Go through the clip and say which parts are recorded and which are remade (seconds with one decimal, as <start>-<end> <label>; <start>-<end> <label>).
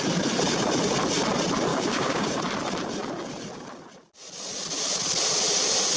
0.0-1.7 recorded; 1.7-2.3 remade; 2.3-6.0 recorded